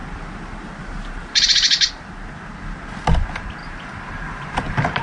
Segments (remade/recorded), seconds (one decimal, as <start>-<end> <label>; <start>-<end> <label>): 0.0-3.6 recorded; 3.6-5.0 remade